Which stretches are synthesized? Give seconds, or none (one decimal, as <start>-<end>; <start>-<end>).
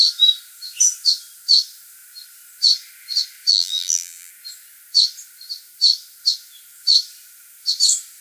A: 3.5-4.3